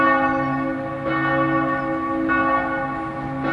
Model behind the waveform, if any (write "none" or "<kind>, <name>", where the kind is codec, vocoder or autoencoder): none